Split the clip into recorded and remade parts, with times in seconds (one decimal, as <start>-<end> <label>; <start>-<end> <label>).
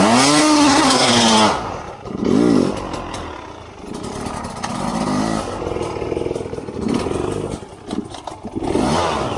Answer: 0.0-0.4 recorded; 0.4-1.1 remade; 1.1-9.4 recorded